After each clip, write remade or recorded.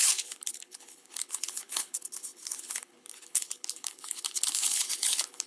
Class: remade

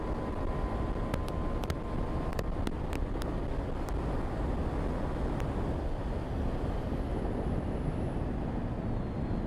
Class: recorded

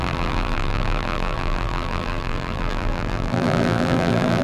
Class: remade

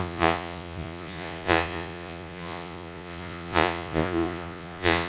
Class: remade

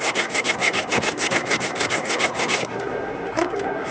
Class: remade